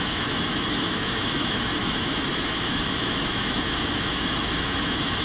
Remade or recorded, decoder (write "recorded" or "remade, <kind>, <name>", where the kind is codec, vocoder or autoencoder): remade, autoencoder, DAC-VAE